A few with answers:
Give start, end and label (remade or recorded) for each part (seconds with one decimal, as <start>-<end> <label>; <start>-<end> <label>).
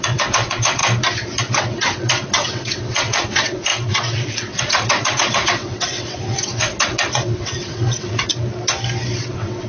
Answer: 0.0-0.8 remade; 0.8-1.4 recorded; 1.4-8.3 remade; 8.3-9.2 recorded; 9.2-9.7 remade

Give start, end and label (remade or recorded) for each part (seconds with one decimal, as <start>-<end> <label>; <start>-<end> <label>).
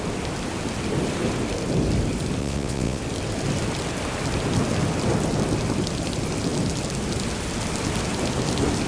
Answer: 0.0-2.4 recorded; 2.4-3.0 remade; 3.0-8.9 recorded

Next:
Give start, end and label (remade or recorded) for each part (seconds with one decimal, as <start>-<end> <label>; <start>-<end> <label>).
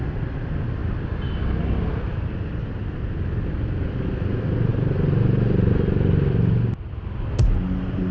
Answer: 0.0-8.1 recorded